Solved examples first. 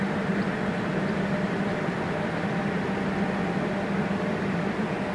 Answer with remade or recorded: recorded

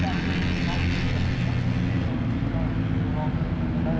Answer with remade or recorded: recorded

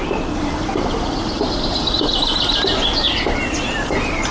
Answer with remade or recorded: recorded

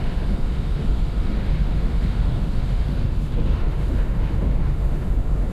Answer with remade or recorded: remade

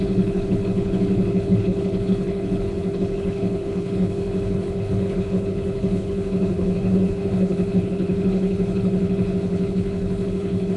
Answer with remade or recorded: remade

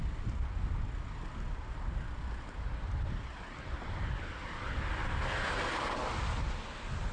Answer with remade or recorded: recorded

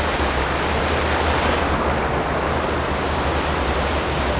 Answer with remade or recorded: recorded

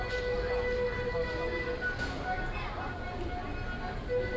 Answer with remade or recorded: recorded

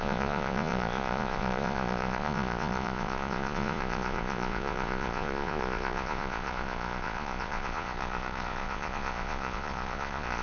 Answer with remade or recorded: remade